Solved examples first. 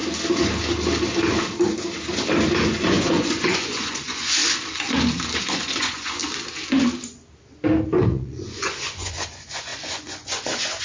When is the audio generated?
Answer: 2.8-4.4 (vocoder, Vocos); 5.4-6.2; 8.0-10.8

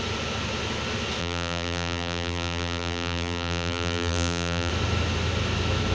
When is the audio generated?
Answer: 1.2-4.7 (vocoder, BigVGAN v2)

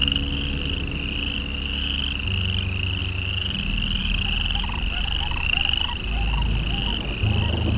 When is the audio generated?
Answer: none

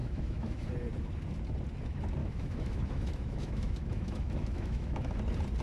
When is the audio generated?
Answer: 0.0-0.7 (autoencoder, DAC-VAE); 2.2-5.1

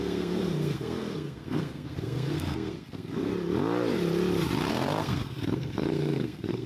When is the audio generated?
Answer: 0.0-3.3 (codec, SNAC); 4.7-6.7

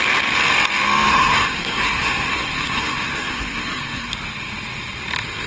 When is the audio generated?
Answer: 1.1-4.1 (codec, SNAC)

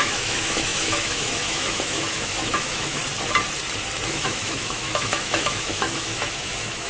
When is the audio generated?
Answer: 0.0-3.0 (autoencoder, DAC-VAE); 4.1-6.9

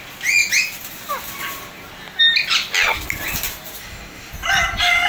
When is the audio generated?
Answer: 3.8-4.3 (codec, DAC)